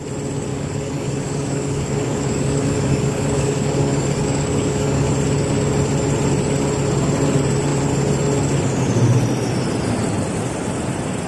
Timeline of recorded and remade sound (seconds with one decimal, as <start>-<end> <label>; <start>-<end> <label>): 0.0-0.5 recorded; 0.5-5.1 remade; 5.1-11.3 recorded